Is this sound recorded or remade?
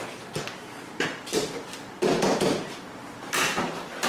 recorded